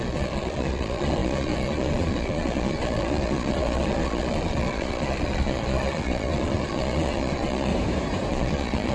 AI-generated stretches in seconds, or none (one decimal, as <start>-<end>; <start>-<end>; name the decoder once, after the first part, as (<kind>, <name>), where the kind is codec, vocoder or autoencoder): 0.0-7.7 (vocoder, Vocos); 8.3-8.9